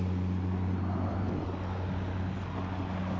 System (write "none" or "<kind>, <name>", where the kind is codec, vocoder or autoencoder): none